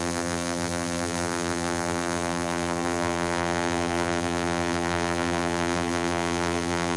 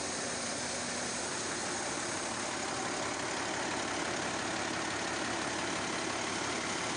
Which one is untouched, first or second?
second